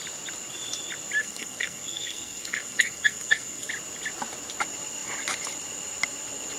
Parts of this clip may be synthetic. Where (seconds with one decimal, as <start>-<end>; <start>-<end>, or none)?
1.2-3.7